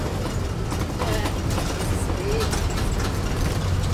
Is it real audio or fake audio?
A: real